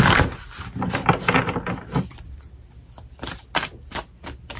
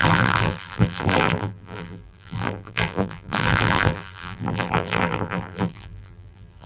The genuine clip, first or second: first